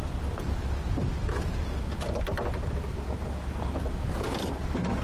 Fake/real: real